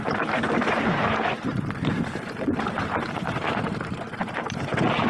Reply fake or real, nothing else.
fake